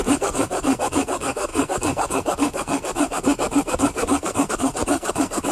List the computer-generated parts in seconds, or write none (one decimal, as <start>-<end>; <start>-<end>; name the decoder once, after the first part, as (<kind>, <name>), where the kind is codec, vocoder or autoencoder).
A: 0.0-5.5 (codec, SNAC)